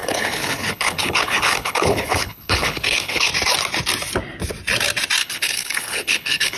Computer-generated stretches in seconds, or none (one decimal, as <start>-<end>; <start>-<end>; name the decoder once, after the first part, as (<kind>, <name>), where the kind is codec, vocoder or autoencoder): 0.0-3.3 (codec, HILCodec); 5.2-6.6